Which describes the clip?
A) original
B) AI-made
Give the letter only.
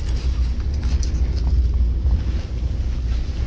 A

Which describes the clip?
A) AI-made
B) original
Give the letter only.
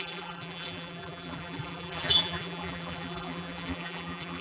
A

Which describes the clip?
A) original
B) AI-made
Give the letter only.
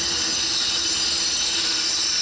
A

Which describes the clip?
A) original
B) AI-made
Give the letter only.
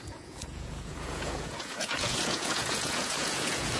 B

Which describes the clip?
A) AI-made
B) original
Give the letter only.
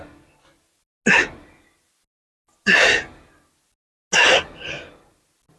B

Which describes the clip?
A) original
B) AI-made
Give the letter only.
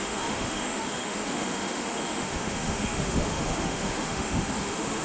B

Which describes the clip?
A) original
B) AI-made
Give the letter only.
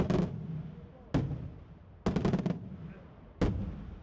A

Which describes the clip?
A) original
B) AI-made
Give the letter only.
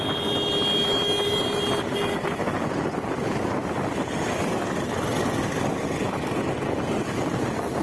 A